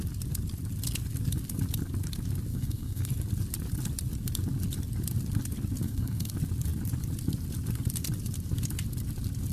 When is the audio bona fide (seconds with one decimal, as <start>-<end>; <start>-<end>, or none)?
0.0-2.5; 3.1-5.8; 6.3-9.5